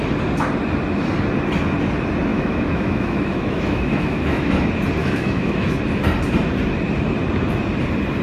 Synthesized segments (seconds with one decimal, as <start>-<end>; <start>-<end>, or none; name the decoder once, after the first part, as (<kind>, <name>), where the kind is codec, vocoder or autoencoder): 2.3-4.5 (autoencoder, DAC-VAE); 5.0-5.8